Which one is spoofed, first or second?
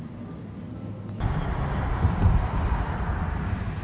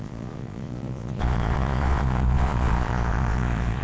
second